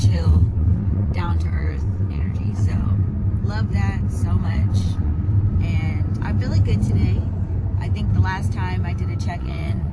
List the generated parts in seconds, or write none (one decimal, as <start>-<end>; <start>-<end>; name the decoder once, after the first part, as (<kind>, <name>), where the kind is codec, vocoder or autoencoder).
0.0-3.1 (vocoder, WaveNeXt); 4.4-5.1; 9.4-9.9